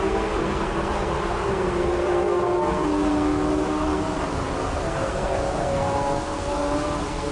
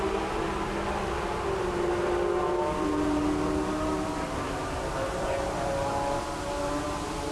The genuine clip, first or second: second